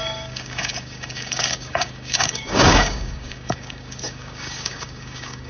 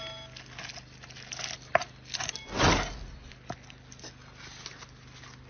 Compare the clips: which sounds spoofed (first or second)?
first